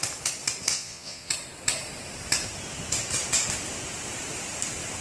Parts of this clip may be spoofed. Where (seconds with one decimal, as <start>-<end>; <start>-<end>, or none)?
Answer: 0.7-1.3